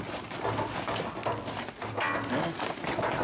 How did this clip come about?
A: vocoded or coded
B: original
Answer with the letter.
B